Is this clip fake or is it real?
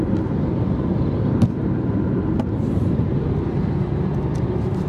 real